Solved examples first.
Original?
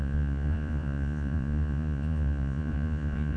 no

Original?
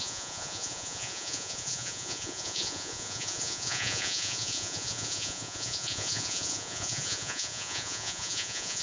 no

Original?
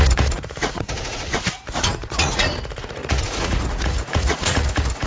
no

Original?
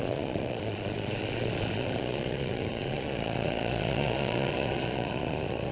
no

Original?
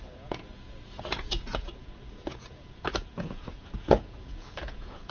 no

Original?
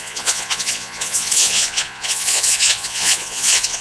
no